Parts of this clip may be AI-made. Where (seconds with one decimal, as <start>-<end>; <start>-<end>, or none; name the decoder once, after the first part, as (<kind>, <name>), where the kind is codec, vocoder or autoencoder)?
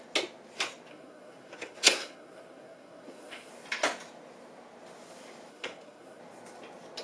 0.9-3.5 (codec, SNAC); 5.5-6.2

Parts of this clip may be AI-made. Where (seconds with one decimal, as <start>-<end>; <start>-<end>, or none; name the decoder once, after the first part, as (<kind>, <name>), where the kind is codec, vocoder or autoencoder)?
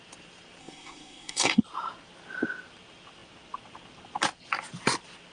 0.6-1.6 (codec, SNAC)